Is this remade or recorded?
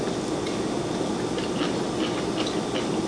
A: recorded